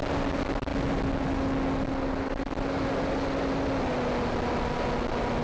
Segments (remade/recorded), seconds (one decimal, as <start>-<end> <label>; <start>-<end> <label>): 0.0-5.4 recorded